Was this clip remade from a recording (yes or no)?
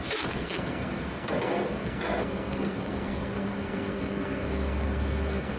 yes